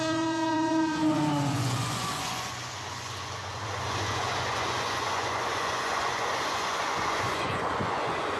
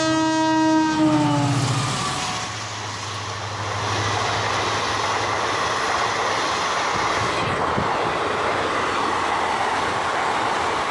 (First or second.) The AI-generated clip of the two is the first